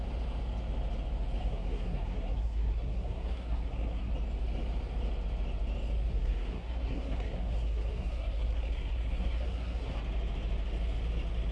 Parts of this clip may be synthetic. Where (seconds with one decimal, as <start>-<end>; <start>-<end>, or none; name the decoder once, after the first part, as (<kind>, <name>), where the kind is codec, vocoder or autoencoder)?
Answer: 1.4-4.1 (codec, SNAC); 6.1-10.0